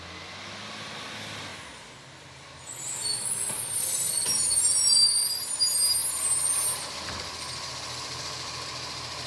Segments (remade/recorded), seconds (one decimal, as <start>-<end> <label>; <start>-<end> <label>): 0.0-9.3 recorded